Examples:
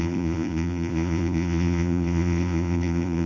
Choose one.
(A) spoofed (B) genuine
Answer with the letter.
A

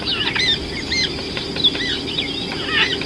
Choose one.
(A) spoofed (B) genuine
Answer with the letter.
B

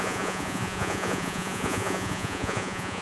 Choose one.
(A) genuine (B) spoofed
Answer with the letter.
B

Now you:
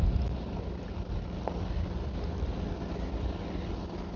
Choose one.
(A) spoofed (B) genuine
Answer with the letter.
B